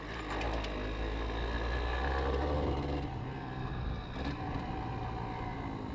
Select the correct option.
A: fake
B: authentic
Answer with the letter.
B